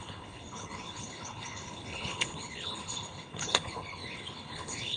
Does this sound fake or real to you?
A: fake